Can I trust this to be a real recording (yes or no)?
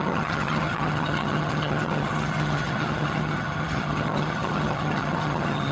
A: no